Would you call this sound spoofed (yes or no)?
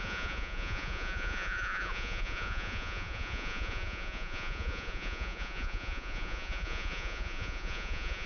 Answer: yes